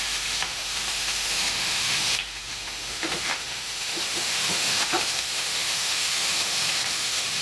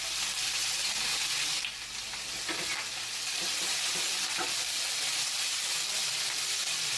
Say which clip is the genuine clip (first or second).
second